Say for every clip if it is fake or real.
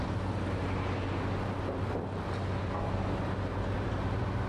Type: real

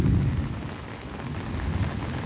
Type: real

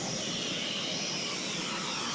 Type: real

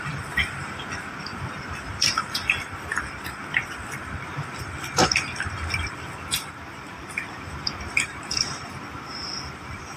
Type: fake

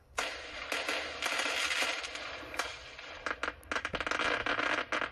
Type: real